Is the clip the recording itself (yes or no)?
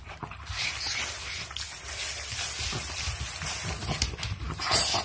yes